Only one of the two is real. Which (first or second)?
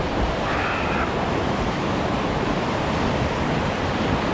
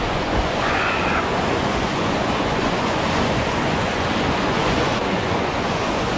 first